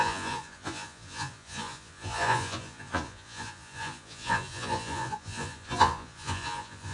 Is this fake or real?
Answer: fake